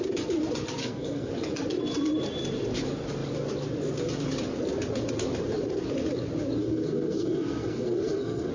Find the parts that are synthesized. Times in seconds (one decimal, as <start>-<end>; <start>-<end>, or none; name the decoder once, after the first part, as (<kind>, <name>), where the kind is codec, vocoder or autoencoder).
0.8-1.3 (codec, SNAC); 6.6-8.5